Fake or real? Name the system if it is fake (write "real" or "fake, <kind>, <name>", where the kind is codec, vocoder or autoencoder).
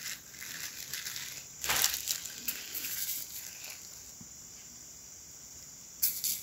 real